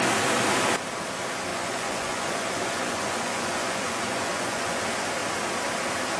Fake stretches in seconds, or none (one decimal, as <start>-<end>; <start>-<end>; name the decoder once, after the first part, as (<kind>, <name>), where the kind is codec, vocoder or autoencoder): 1.5-4.8 (vocoder, Vocos)